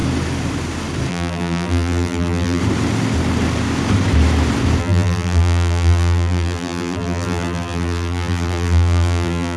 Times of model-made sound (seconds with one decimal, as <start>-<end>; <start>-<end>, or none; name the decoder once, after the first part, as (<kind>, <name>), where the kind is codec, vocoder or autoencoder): 1.1-2.6 (vocoder, BigVGAN v2); 4.8-9.6